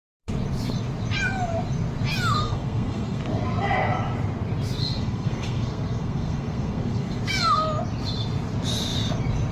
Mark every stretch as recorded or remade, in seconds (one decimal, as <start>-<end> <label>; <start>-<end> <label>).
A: 0.0-2.4 recorded; 2.4-3.2 remade; 3.2-4.8 recorded; 4.8-7.2 remade; 7.2-9.5 recorded